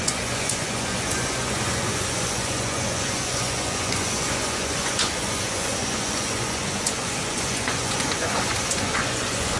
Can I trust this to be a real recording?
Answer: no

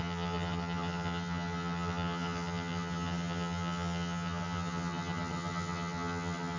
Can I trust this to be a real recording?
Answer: no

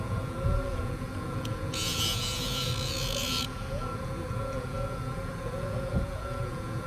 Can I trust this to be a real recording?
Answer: no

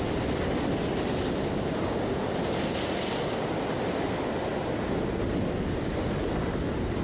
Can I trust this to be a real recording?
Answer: yes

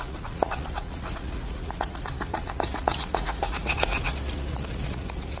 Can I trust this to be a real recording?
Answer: no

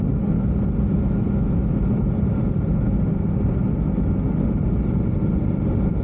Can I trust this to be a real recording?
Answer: yes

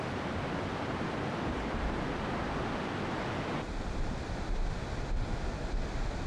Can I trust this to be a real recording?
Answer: yes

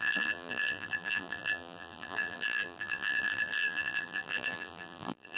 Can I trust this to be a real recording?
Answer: no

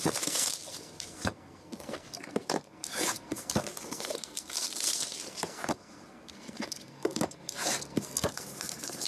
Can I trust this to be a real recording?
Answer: no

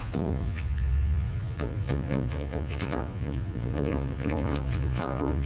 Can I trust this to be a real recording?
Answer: no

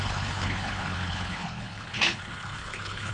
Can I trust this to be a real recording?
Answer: no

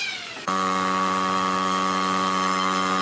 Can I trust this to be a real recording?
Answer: no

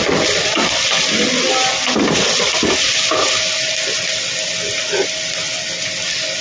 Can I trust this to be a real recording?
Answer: yes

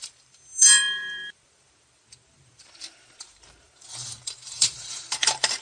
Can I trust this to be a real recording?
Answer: no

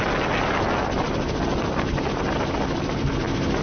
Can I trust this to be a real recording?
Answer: yes